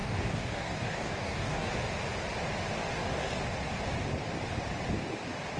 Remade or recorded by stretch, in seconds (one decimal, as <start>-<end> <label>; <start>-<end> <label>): 0.0-1.7 remade; 1.7-2.9 recorded; 2.9-3.4 remade; 3.4-5.6 recorded